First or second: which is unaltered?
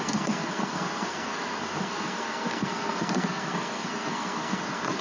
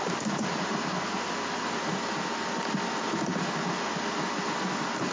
second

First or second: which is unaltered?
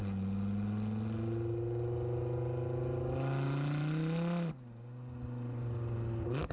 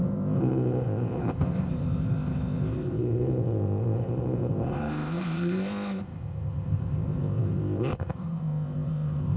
first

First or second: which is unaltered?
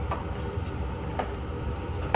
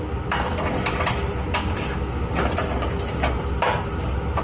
second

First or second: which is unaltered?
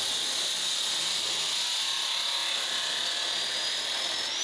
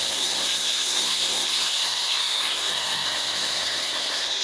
first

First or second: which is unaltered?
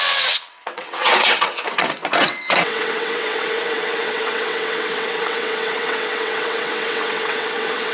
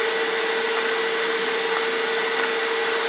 second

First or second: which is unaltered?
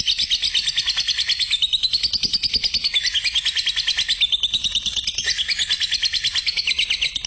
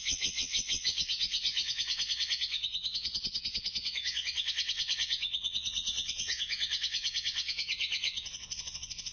first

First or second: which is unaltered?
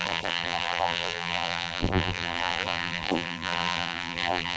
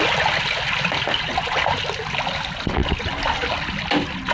second